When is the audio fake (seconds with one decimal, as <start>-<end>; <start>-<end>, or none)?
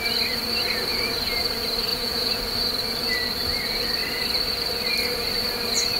1.9-2.4